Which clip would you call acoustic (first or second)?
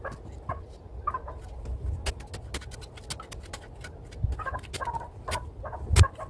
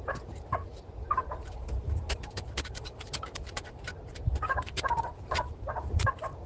first